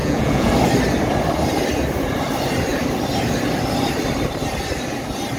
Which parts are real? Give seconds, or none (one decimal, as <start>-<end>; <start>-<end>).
0.5-5.4